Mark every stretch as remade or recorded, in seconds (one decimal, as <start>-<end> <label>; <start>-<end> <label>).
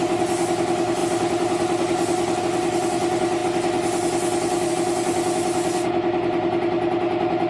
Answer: 0.0-7.5 recorded